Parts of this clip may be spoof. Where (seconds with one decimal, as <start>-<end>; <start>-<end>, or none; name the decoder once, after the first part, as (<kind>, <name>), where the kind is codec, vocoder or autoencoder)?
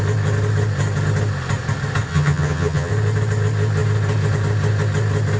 2.1-2.9 (vocoder, HiFi-GAN)